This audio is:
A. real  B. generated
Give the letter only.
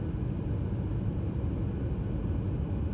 A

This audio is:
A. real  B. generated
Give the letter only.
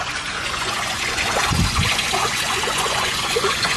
B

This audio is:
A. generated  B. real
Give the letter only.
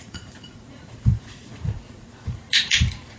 A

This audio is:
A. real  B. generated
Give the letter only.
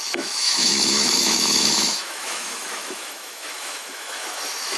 B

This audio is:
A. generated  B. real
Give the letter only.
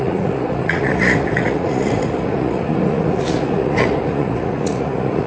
A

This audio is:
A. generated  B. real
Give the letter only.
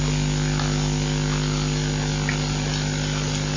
B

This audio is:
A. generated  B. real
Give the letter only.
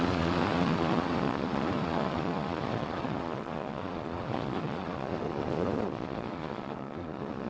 A